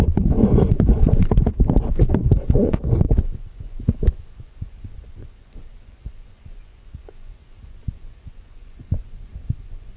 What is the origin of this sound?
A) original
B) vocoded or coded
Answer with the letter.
B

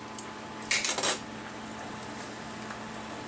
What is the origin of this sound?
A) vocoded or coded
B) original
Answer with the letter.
B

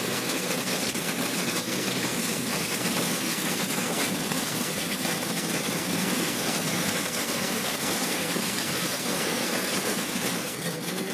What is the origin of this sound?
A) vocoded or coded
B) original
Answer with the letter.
A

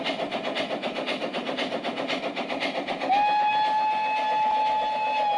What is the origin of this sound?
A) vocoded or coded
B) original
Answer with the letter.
B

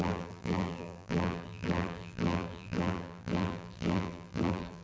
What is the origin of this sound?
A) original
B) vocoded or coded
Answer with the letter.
B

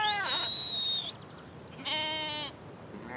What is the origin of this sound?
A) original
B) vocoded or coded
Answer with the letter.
A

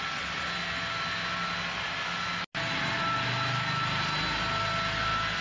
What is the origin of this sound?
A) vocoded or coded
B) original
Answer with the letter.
B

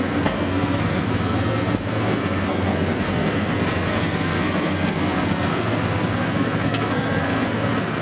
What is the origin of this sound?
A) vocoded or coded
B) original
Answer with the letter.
A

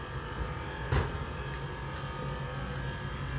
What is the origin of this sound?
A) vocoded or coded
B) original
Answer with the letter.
B